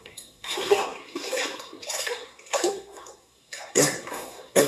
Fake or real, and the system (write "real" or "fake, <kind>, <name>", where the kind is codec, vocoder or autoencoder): fake, codec, SNAC